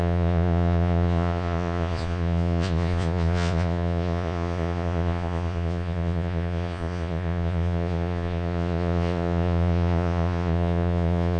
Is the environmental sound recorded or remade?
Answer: remade